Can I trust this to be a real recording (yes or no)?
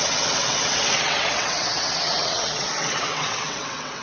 no